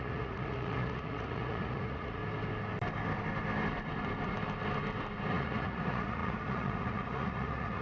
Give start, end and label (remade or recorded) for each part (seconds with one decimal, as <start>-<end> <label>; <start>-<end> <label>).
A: 0.0-2.2 remade; 2.2-5.3 recorded; 5.3-7.8 remade